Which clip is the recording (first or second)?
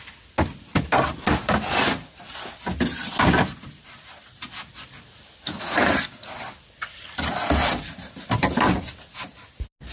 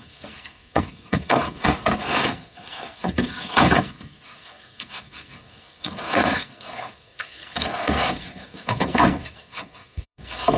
first